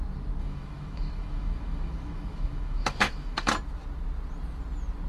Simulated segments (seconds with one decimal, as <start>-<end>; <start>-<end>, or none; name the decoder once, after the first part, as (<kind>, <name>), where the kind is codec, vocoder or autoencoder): 0.4-3.5 (autoencoder, DAC-VAE)